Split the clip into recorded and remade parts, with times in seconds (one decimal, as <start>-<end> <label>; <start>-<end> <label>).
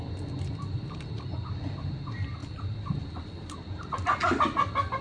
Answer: 0.0-2.4 recorded; 2.4-3.3 remade; 3.3-5.0 recorded